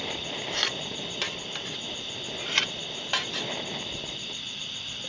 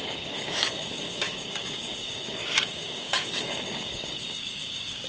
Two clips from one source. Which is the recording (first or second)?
first